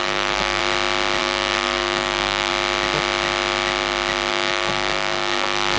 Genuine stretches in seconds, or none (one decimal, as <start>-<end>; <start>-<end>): 0.6-1.2; 2.5-4.3